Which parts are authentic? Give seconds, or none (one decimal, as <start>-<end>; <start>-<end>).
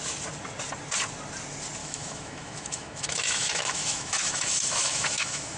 0.0-1.8